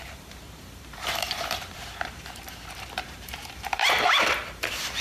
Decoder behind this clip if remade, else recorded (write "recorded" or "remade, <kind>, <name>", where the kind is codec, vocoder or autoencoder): remade, vocoder, BigVGAN v2